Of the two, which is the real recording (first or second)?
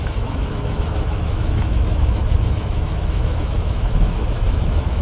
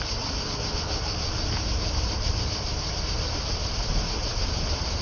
second